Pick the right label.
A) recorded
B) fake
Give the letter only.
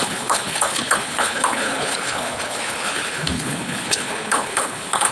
B